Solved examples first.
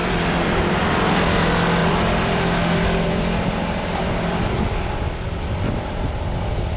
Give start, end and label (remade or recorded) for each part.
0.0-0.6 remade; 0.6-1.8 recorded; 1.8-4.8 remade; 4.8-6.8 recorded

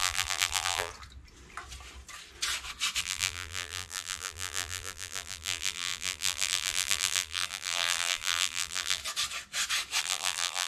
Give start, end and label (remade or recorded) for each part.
0.0-0.9 remade; 0.9-3.0 recorded; 3.0-9.0 remade; 9.0-10.0 recorded; 10.0-10.7 remade

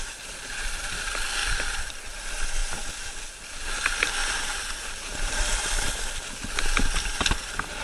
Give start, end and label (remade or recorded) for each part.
0.0-1.4 recorded; 1.4-2.0 remade; 2.0-4.2 recorded; 4.2-6.4 remade; 6.4-7.8 recorded

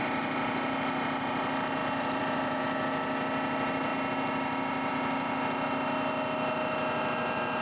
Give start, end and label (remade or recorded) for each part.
0.0-1.8 recorded; 1.8-2.6 remade; 2.6-7.6 recorded

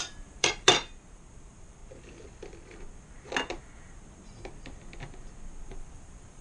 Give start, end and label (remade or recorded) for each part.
0.0-1.8 remade; 1.8-5.6 recorded; 5.6-6.4 remade

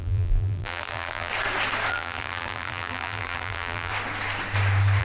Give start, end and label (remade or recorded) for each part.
0.0-1.3 remade; 1.3-1.9 recorded; 1.9-3.9 remade; 3.9-5.0 recorded

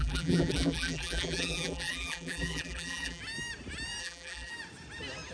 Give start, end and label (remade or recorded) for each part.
0.0-3.2 remade; 3.2-4.0 recorded; 4.0-4.5 remade; 4.5-5.3 recorded